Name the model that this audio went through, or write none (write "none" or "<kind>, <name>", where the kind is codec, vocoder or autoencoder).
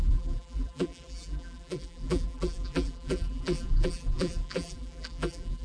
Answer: vocoder, BigVGAN v2